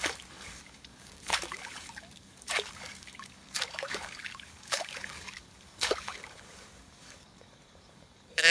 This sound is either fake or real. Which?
fake